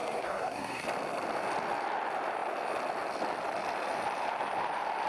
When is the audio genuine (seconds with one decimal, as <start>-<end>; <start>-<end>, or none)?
0.8-5.1